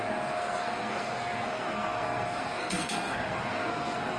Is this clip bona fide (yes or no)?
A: no